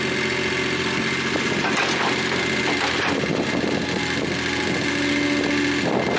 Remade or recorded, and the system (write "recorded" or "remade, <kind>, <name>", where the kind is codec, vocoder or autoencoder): recorded